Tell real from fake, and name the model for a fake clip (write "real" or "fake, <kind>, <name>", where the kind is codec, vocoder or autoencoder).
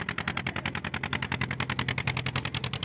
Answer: real